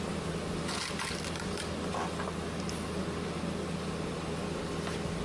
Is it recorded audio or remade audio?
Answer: recorded